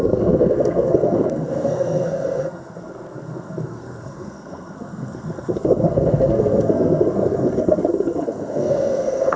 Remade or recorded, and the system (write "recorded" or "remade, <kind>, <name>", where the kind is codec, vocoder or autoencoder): remade, codec, SNAC